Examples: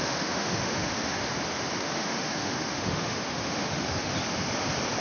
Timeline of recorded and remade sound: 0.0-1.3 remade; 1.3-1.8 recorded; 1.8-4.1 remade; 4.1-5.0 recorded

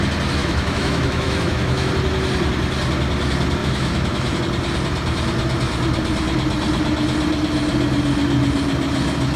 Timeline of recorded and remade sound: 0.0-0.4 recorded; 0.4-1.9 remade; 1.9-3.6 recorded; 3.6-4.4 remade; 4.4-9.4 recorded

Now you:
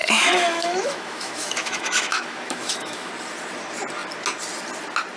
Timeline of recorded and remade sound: 0.0-3.1 remade; 3.1-5.2 recorded

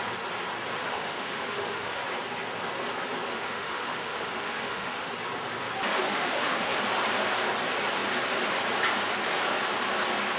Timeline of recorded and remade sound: 0.0-0.8 recorded; 0.8-2.0 remade; 2.0-3.3 recorded; 3.3-5.1 remade; 5.1-6.0 recorded; 6.0-6.8 remade; 6.8-10.4 recorded

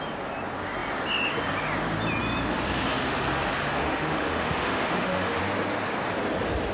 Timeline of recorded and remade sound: 0.0-3.8 recorded; 3.8-5.4 remade; 5.4-6.7 recorded

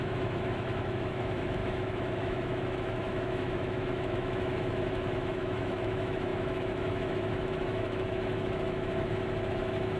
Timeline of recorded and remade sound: 0.0-10.0 remade

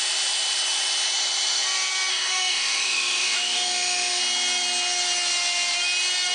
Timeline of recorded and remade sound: 0.0-2.1 recorded; 2.1-4.2 remade; 4.2-6.3 recorded

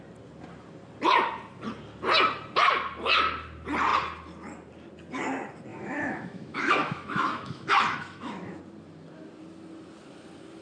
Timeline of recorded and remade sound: 0.0-5.7 recorded; 5.7-8.6 remade; 8.6-10.6 recorded